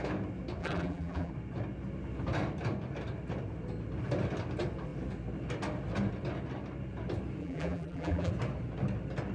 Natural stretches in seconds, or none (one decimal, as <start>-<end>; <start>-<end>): 0.0-0.6; 1.3-7.4; 8.3-9.3